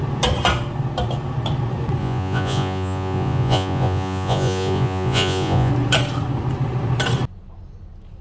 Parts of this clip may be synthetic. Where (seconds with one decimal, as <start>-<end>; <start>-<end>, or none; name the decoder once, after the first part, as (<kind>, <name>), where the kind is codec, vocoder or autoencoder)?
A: 2.0-5.7 (vocoder, Vocos)

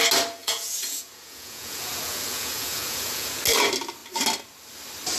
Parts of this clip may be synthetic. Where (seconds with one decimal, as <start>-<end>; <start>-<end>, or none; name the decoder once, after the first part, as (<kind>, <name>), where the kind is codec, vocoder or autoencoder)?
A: 0.4-3.4 (vocoder, Vocos)

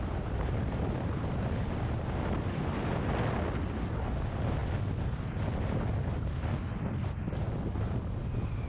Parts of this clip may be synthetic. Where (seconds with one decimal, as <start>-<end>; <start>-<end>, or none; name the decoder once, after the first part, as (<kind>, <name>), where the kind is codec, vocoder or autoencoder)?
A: none

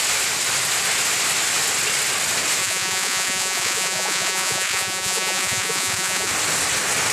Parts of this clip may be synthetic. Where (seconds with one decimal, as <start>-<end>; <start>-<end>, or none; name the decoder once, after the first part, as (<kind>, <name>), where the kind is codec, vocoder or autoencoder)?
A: 2.6-6.3 (vocoder, Vocos)

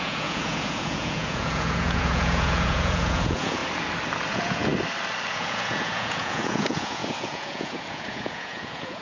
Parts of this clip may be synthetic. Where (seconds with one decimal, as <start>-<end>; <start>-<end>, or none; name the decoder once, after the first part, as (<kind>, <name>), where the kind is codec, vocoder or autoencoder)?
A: 0.0-3.6 (vocoder, Vocos); 4.3-4.7; 5.3-9.0

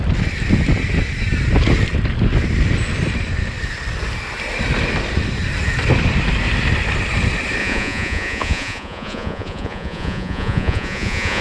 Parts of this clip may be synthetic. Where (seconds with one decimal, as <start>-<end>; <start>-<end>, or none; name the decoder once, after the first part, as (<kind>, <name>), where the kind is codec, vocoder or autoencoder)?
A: 7.6-11.4 (vocoder, Vocos)

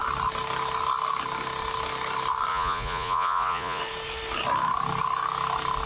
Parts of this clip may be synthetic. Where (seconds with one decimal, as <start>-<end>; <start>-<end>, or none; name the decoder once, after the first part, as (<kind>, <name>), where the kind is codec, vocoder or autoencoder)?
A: 2.5-3.8 (vocoder, Vocos)